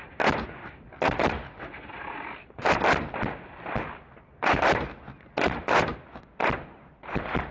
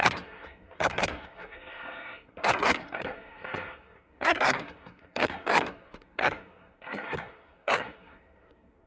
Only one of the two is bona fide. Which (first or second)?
first